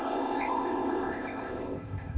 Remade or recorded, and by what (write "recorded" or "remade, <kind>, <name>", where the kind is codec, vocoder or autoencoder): remade, codec, ZipCodec